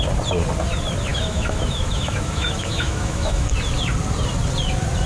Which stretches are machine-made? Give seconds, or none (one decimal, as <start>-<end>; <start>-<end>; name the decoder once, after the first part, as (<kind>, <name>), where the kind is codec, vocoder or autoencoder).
1.1-3.5 (autoencoder, DAC-VAE)